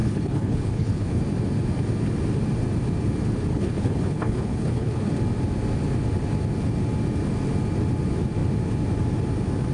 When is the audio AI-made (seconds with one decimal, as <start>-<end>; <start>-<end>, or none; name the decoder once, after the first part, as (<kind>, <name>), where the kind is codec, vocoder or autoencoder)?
0.0-1.2 (codec, HILCodec); 3.5-5.1

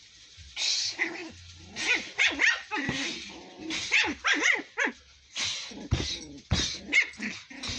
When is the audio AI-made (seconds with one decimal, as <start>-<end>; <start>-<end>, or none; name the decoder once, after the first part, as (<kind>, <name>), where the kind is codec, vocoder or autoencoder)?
none